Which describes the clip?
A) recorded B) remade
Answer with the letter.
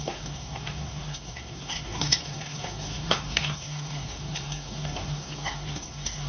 B